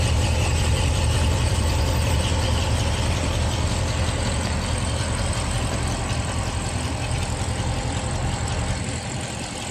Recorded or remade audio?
recorded